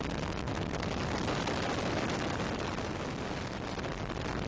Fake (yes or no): no